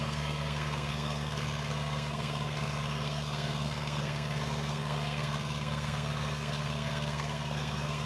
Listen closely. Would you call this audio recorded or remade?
remade